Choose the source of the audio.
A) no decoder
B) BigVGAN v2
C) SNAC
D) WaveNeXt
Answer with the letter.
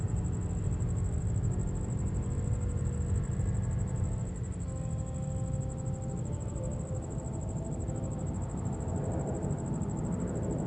A